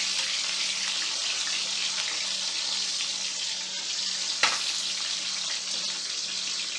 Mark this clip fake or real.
real